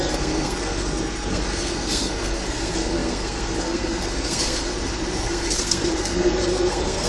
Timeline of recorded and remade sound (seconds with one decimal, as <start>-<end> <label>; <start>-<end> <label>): 0.0-4.7 remade; 4.7-5.2 recorded; 5.2-7.1 remade